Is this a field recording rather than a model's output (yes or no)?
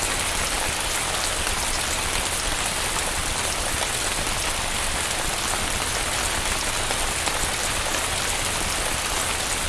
yes